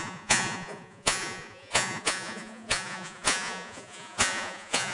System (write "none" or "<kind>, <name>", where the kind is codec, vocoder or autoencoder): vocoder, Vocos